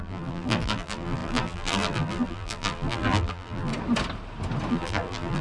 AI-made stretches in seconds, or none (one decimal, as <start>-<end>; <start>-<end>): 0.0-3.7; 4.7-5.4